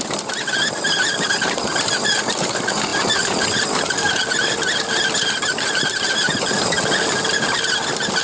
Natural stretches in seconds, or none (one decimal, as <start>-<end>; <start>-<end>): 0.0-8.2